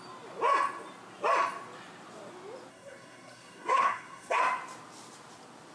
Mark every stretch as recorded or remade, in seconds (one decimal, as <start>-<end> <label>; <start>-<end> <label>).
0.0-2.7 recorded; 2.7-4.4 remade; 4.4-5.7 recorded